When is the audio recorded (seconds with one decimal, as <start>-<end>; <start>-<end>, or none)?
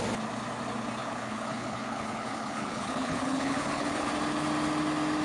0.0-1.0; 4.1-5.2